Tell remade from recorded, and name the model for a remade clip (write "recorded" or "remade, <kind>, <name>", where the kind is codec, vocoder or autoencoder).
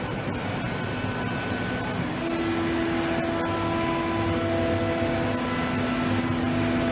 recorded